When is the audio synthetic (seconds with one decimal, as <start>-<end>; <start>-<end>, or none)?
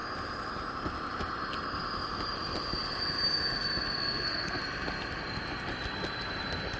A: 4.0-4.6